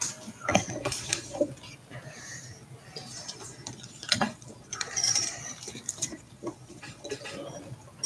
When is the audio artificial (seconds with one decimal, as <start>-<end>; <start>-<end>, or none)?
0.5-1.5; 3.0-5.4; 6.1-7.1